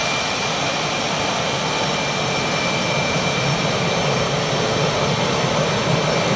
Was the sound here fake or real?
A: real